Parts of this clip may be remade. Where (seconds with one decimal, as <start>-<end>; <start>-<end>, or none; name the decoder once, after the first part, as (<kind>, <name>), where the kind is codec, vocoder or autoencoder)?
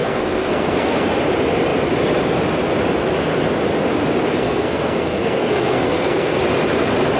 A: 0.0-1.1 (codec, SNAC); 4.4-6.4